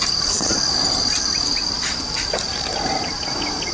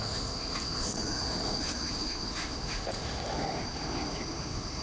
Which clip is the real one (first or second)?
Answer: first